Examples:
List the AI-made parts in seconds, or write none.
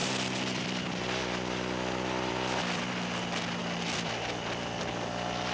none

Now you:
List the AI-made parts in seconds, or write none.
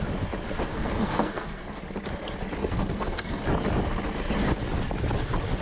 0.7-1.8 (codec, SNAC); 2.6-3.4